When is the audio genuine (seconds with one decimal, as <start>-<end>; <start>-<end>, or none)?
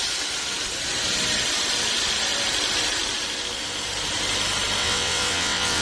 0.0-4.8